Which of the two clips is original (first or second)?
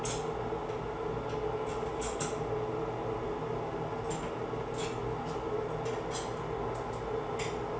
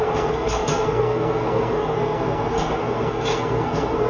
first